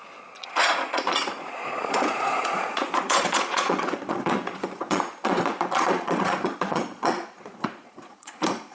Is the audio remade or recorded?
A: remade